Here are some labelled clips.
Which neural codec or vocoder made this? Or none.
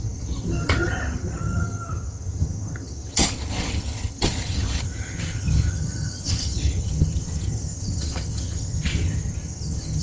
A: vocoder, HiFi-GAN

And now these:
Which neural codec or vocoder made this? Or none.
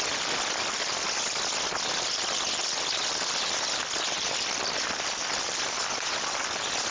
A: none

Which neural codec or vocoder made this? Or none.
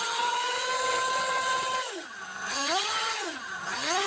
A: vocoder, HiFi-GAN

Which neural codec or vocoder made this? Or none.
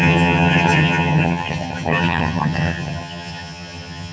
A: vocoder, HiFi-GAN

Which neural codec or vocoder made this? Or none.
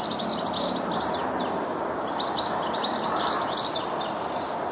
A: none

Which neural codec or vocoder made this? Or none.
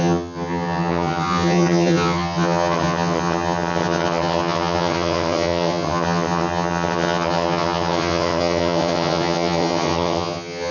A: vocoder, HiFi-GAN